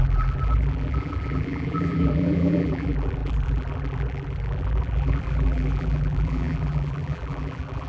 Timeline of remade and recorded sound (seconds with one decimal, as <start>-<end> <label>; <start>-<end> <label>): 0.0-7.9 remade